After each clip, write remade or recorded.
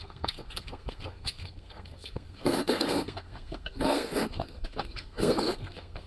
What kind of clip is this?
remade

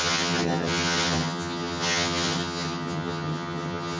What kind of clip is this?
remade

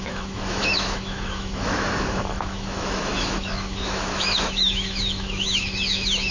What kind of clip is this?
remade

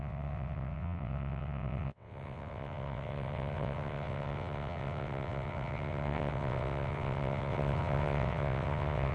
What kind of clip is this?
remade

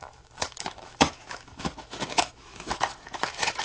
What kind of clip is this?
remade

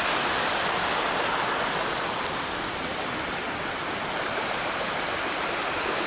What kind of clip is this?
recorded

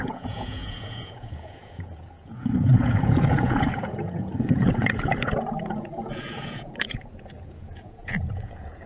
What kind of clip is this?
remade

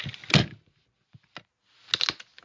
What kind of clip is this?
recorded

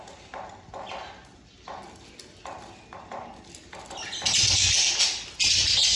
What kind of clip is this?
recorded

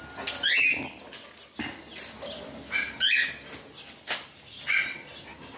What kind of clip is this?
recorded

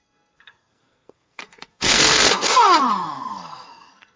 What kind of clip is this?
remade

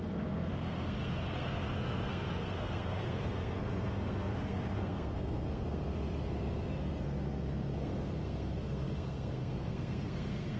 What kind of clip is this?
remade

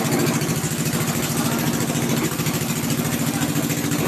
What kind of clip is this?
recorded